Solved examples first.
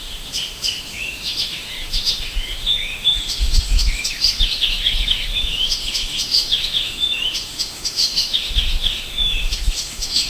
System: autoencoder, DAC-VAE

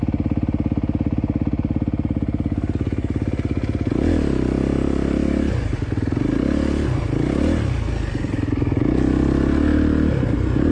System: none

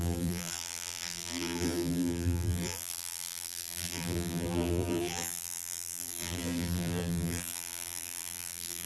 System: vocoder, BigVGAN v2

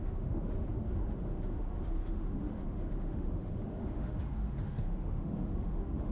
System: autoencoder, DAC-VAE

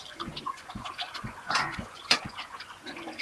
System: vocoder, Vocos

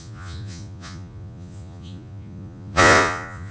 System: vocoder, Vocos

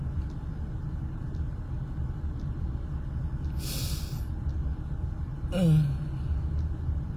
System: none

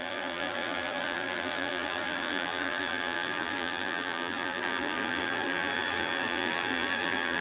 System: vocoder, BigVGAN v2